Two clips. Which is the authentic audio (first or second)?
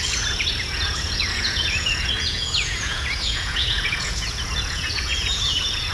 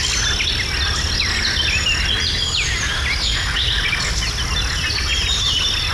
second